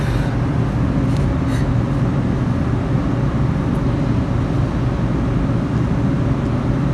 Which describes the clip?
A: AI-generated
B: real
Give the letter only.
B